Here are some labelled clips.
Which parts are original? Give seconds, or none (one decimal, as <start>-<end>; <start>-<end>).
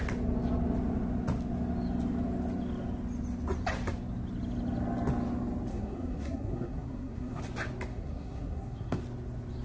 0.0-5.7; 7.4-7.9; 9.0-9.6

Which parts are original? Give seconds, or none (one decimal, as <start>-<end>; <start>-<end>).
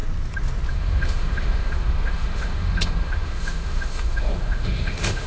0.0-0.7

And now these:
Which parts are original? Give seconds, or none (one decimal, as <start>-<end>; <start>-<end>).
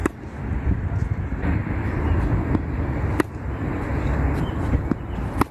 0.0-3.3; 3.9-4.4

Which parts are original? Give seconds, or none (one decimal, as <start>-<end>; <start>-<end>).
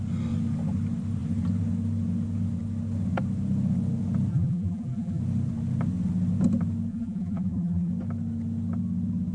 0.0-4.3; 5.2-6.9; 7.9-9.3